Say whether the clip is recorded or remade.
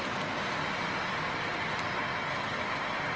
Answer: recorded